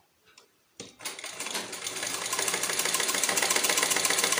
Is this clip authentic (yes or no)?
yes